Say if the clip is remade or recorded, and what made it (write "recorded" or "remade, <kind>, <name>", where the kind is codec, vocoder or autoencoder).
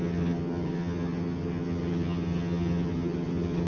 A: remade, vocoder, HiFi-GAN